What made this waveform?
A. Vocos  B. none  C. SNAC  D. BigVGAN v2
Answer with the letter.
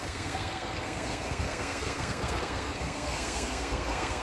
C